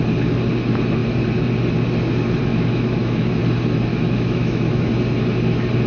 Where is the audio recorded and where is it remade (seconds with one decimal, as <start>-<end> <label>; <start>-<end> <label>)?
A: 0.0-2.5 recorded; 2.5-3.4 remade; 3.4-3.9 recorded; 3.9-4.9 remade; 4.9-5.9 recorded